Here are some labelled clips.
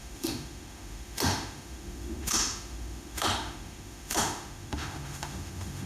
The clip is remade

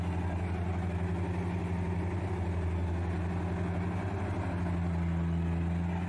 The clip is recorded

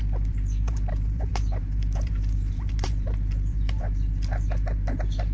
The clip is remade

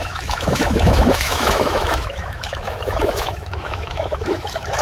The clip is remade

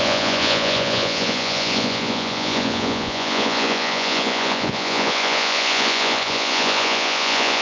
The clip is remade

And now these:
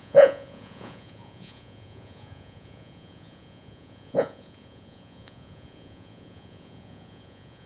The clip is remade